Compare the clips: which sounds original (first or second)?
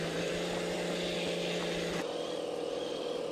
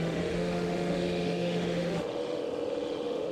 first